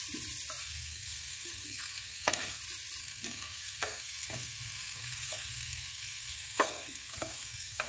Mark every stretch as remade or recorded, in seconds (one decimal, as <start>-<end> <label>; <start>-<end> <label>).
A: 0.0-0.6 recorded; 0.6-2.6 remade; 2.6-3.0 recorded; 3.0-7.9 remade